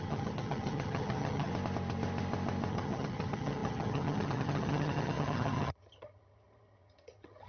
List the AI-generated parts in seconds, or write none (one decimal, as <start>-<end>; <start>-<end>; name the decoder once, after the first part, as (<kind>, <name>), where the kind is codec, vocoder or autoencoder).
0.0-1.5 (vocoder, HiFi-GAN); 2.7-7.5